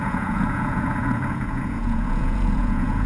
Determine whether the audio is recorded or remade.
remade